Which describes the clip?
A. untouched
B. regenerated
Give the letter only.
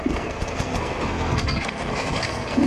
B